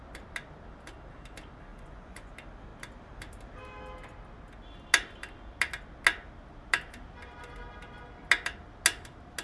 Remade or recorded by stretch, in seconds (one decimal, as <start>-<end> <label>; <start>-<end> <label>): 0.0-1.7 recorded; 1.7-2.3 remade; 2.3-9.4 recorded